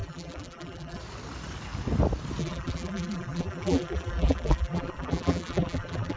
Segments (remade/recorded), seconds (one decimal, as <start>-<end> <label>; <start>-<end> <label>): 0.0-1.0 remade; 1.0-2.4 recorded; 2.4-6.2 remade